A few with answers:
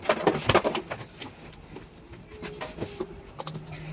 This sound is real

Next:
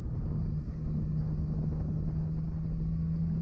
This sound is real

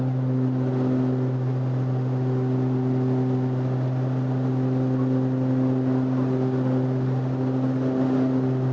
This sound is real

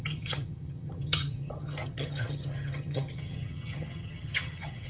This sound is fake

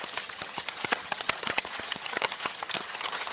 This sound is fake